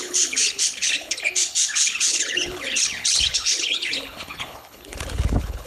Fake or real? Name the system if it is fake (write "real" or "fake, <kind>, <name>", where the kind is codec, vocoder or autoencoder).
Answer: fake, codec, HILCodec